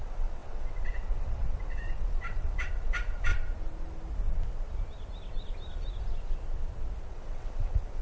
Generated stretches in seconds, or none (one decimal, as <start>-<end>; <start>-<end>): 0.0-3.3; 7.1-8.0